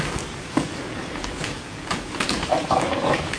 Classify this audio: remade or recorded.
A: remade